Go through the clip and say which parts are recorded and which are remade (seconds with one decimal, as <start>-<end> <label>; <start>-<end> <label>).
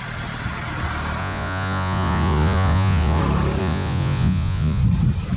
0.0-1.2 recorded; 1.2-3.2 remade; 3.2-3.6 recorded; 3.6-4.8 remade; 4.8-5.4 recorded